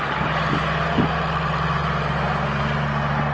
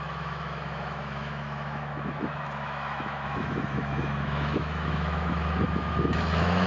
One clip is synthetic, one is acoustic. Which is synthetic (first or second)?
second